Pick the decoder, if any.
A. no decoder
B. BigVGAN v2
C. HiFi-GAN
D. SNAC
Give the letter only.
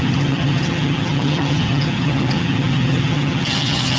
C